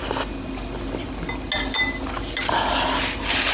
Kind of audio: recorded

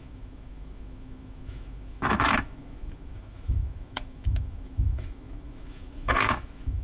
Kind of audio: remade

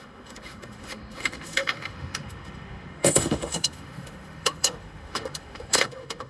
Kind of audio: remade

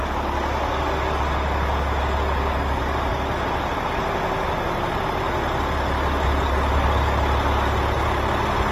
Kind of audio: recorded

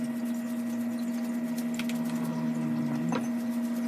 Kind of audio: recorded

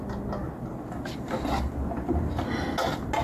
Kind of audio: recorded